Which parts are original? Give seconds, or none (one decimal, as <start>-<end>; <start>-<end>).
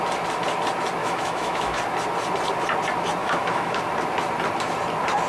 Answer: 0.0-1.0; 1.8-3.2; 3.8-5.3